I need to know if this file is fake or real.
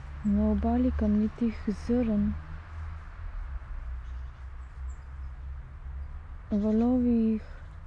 real